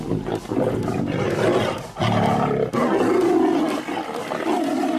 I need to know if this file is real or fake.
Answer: real